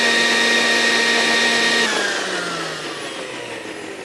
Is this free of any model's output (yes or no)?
yes